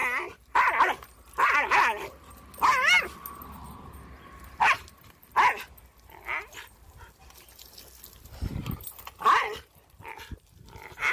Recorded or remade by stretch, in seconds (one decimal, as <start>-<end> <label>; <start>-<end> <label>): 0.0-11.1 recorded